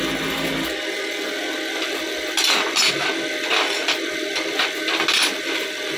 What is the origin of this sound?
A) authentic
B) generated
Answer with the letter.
A